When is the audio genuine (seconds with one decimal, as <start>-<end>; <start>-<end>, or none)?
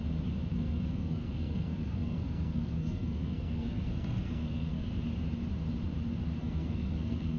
0.0-0.5; 4.9-6.4